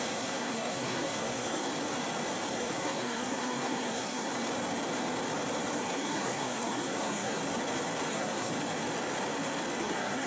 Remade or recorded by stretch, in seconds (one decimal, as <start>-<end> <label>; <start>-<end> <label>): 0.0-1.7 remade; 1.7-2.5 recorded; 2.5-4.3 remade; 4.3-5.8 recorded; 5.8-7.4 remade; 7.4-8.1 recorded; 8.1-8.5 remade; 8.5-9.8 recorded; 9.8-10.3 remade